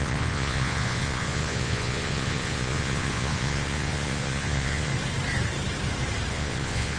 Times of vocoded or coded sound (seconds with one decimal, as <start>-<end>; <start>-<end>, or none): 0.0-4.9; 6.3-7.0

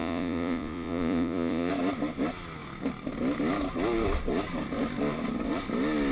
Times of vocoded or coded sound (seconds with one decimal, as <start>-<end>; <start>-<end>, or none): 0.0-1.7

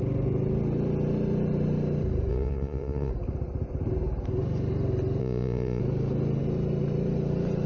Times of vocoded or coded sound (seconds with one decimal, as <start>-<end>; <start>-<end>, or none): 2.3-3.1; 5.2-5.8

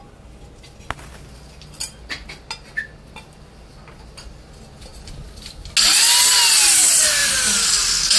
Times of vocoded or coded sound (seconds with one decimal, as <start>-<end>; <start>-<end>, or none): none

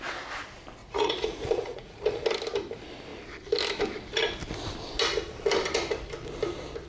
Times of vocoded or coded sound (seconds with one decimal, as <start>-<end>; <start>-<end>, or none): 0.8-2.2